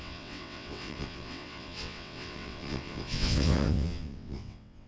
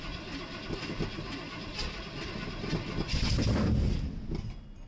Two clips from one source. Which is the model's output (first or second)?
first